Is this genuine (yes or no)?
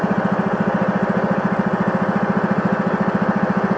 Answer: yes